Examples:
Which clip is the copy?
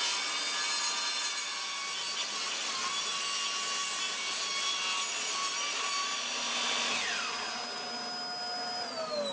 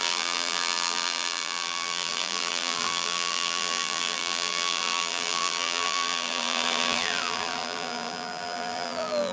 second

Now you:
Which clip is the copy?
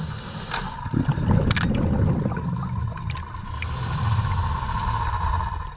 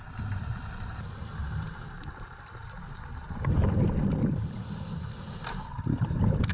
second